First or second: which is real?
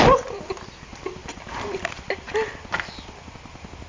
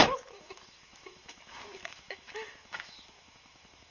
first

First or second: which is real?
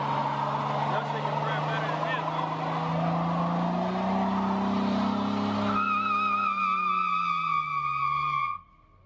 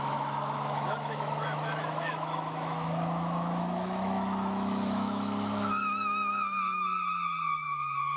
first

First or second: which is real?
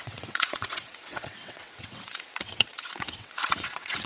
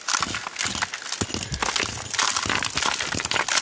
second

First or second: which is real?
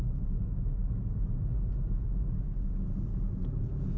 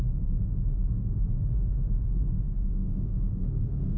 first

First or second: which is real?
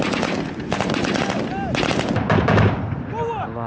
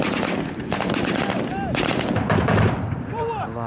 first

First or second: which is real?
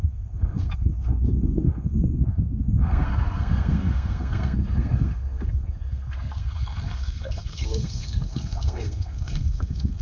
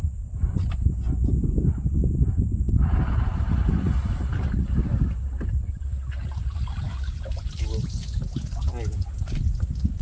second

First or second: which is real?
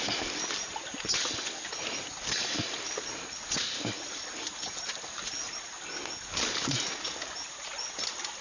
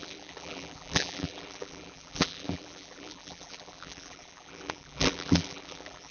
first